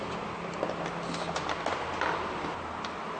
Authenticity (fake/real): real